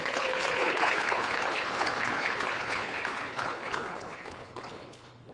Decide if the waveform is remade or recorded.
remade